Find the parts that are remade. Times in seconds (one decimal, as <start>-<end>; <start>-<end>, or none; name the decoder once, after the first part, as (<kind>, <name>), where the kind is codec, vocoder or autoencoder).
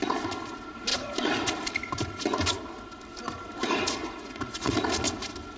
4.0-4.8 (vocoder, Vocos)